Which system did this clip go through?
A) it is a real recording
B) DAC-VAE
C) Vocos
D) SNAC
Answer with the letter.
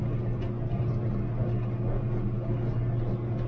A